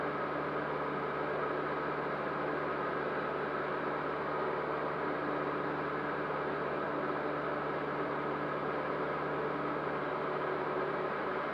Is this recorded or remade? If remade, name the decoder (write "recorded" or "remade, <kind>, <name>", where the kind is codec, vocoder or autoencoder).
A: recorded